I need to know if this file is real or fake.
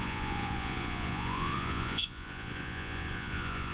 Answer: fake